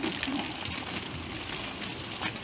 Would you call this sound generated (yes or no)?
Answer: no